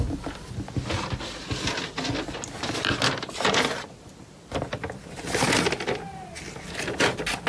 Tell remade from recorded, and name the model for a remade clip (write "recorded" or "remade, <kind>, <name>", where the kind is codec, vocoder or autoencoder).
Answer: recorded